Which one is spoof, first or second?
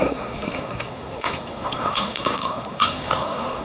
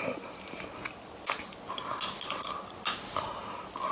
first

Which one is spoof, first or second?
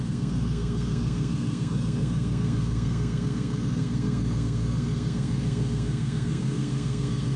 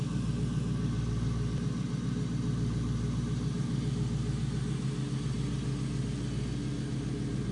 first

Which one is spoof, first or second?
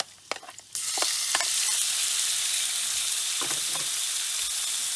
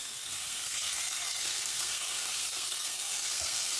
second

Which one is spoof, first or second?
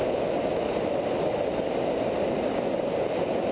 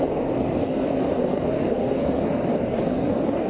second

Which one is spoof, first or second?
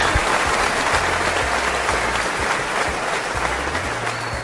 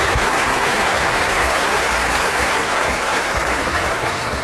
second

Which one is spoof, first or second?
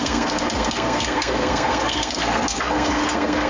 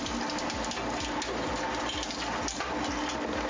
first